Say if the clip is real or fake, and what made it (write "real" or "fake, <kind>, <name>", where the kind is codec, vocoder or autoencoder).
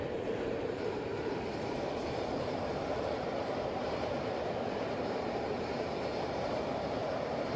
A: fake, vocoder, BigVGAN v2